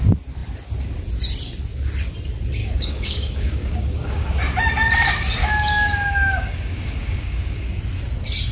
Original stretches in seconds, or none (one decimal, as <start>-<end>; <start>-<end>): 0.0-2.6; 4.4-5.4; 7.8-8.5